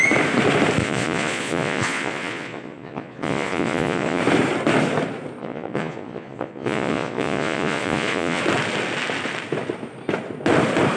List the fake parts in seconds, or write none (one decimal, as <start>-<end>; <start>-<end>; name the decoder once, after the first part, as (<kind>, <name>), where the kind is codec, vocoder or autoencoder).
0.8-4.2 (vocoder, Vocos); 5.4-8.4